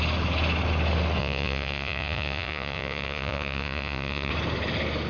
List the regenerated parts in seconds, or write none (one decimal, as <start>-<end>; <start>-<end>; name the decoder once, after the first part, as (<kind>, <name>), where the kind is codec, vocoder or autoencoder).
1.2-4.3 (vocoder, Vocos)